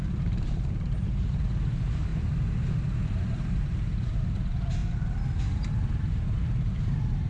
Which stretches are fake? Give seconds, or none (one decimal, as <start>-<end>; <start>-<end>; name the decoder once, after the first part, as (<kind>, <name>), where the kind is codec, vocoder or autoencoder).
0.0-2.1 (vocoder, BigVGAN v2); 3.0-4.8; 5.3-7.3